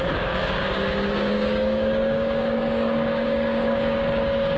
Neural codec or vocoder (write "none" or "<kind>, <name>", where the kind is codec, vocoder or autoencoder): codec, DAC